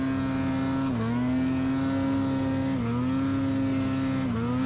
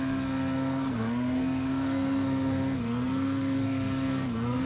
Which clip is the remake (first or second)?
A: second